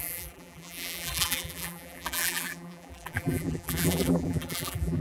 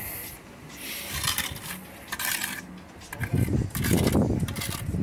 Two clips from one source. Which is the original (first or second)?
second